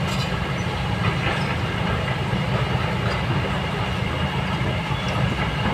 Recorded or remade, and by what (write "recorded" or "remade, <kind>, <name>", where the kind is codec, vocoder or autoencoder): recorded